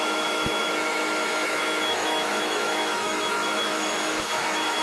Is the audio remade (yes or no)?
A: yes